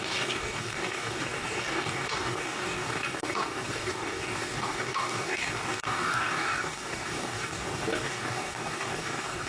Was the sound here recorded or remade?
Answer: remade